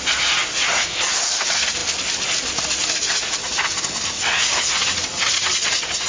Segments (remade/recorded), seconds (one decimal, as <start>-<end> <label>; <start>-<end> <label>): 0.0-6.1 recorded